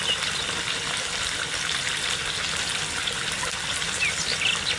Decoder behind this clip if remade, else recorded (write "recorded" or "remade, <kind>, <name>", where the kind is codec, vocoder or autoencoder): recorded